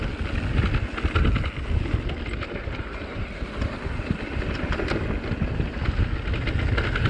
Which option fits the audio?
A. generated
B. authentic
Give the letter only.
B